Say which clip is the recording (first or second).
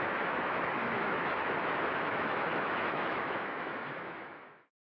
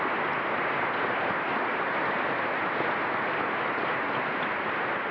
second